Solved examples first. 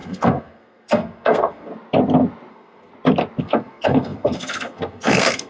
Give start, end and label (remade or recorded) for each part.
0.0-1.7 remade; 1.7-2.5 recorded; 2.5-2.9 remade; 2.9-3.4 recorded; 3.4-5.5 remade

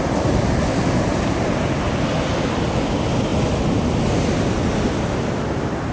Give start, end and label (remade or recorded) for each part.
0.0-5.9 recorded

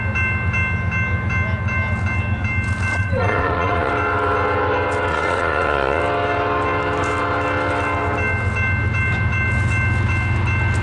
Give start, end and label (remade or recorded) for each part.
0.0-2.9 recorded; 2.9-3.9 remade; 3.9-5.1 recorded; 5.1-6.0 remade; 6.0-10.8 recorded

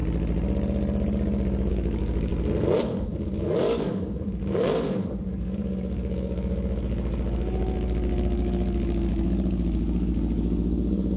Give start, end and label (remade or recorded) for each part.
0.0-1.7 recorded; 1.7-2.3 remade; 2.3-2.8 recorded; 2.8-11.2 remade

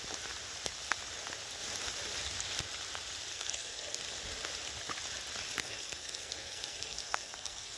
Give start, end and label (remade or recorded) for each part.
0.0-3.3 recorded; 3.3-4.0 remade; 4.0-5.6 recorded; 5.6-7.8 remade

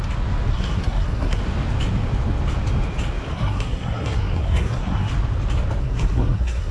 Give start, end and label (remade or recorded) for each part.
0.0-0.5 recorded; 0.5-1.4 remade; 1.4-3.3 recorded; 3.3-5.1 remade; 5.1-5.8 recorded; 5.8-6.7 remade

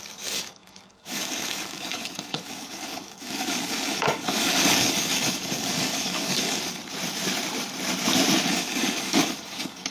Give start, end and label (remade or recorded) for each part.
0.0-6.8 remade; 6.8-8.5 recorded; 8.5-9.9 remade